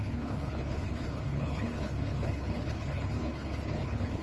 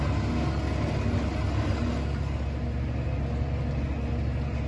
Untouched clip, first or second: second